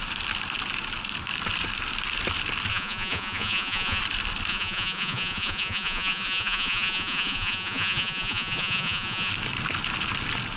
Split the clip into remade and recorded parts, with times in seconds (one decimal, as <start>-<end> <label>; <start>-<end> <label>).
0.0-2.7 recorded; 2.7-4.0 remade; 4.0-4.5 recorded; 4.5-9.3 remade; 9.3-10.6 recorded